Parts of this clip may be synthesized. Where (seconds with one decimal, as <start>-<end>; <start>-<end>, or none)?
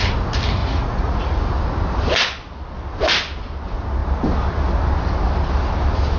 0.6-1.4